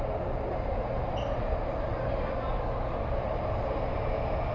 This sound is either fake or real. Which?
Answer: real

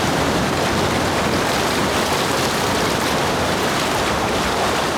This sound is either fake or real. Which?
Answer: fake